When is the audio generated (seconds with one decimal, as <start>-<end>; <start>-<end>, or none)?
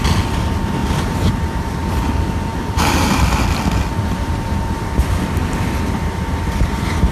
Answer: 0.8-1.3